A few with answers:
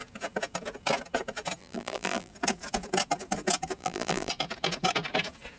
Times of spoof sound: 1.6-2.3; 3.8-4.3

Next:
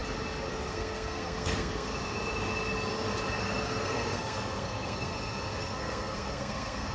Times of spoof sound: 0.5-1.9; 3.4-5.1; 5.6-6.9

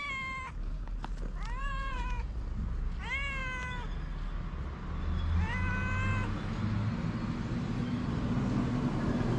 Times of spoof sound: 1.6-2.3